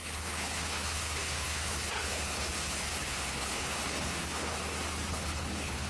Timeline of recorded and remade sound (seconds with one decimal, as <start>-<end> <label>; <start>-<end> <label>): 0.0-4.6 remade; 4.6-5.1 recorded; 5.1-5.9 remade